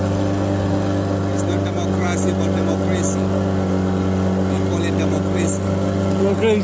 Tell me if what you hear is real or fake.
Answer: real